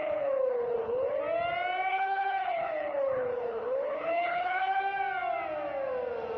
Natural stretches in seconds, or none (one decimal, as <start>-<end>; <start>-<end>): 1.2-1.9; 4.8-6.4